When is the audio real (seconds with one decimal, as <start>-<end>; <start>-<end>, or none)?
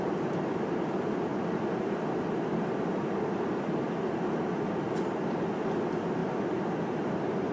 0.0-7.5